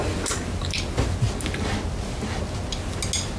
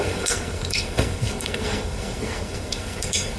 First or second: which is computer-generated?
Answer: second